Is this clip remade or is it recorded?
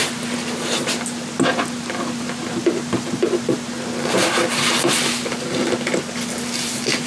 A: remade